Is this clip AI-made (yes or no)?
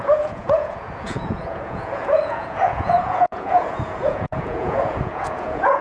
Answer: yes